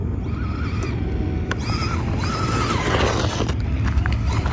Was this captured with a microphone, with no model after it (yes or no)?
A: yes